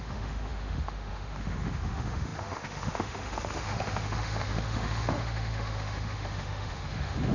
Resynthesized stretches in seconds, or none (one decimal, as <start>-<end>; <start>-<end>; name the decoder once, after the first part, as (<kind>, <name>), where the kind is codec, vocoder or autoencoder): 0.0-7.3 (autoencoder, DAC-VAE)